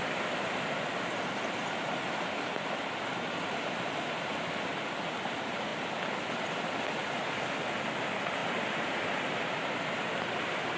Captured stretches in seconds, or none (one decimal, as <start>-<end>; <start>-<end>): 0.0-8.4; 9.8-10.8